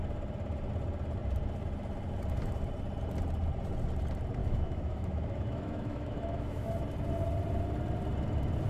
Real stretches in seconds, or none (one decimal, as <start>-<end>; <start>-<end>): 0.0-4.4; 6.7-8.7